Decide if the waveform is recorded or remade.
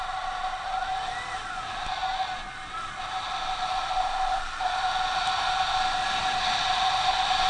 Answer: recorded